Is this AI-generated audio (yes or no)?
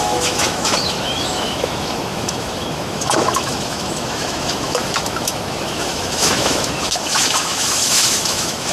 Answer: yes